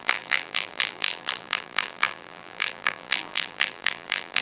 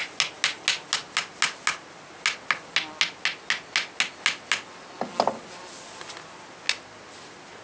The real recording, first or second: second